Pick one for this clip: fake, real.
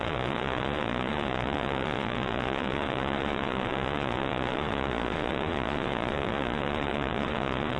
fake